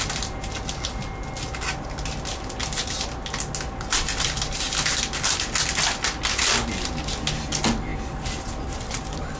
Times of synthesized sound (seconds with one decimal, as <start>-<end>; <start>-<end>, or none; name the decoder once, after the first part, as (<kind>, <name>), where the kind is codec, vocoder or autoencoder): none